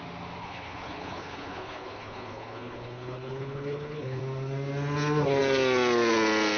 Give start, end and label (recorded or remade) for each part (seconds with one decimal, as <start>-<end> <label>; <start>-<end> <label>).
0.0-0.4 recorded; 0.4-4.2 remade; 4.2-6.6 recorded